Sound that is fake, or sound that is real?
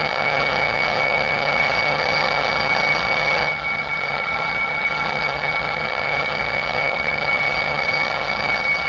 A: fake